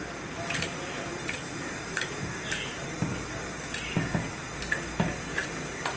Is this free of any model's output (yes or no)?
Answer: yes